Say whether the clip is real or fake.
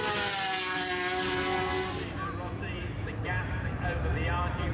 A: real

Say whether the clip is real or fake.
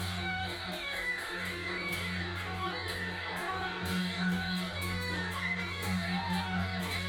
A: fake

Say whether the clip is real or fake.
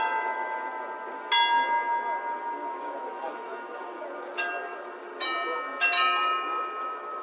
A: real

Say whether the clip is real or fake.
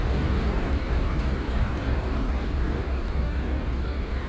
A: fake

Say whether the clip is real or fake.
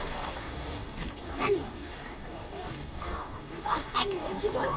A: fake